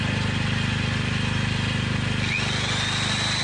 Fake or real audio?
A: real